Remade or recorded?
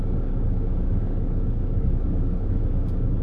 remade